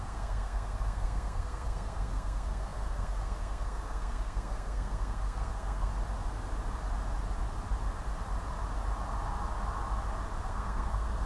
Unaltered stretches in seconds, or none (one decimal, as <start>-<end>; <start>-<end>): 5.9-10.4